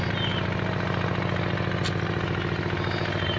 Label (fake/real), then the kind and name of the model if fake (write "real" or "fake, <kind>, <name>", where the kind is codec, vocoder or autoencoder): real